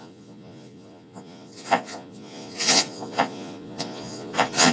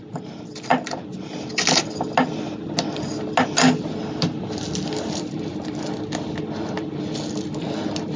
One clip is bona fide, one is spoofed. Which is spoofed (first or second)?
first